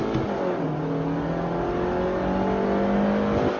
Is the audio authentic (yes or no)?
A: yes